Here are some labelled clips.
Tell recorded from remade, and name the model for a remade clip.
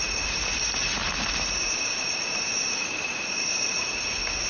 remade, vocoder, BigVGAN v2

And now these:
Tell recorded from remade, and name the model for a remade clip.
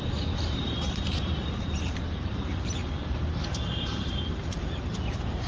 remade, vocoder, BigVGAN v2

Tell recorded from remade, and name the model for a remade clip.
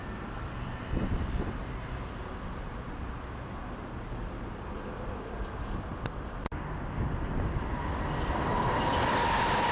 remade, vocoder, BigVGAN v2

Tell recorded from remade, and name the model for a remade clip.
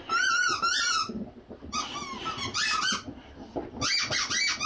recorded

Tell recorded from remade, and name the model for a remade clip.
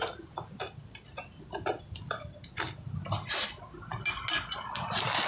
recorded